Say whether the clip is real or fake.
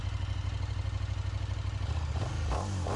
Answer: real